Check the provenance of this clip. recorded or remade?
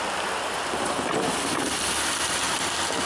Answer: recorded